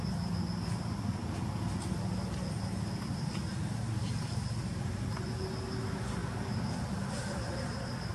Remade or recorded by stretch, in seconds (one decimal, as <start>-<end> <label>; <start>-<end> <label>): 0.0-8.1 recorded